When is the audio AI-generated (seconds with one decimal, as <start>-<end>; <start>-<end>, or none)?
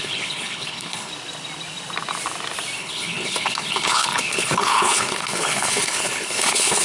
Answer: 0.0-1.1; 2.8-6.8